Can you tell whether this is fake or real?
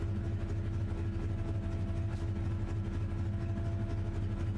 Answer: real